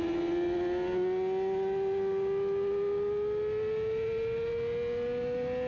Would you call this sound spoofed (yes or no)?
no